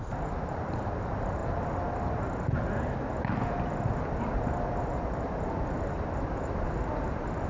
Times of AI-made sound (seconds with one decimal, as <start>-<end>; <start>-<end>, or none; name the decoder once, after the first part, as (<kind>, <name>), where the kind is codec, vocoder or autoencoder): 0.0-1.4 (vocoder, BigVGAN v2); 4.8-7.5